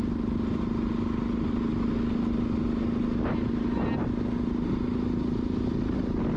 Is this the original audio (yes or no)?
yes